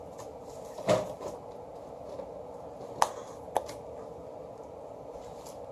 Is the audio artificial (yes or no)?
no